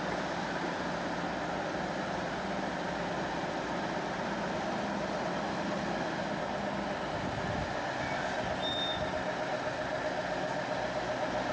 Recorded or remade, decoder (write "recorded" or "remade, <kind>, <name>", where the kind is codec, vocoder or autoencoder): recorded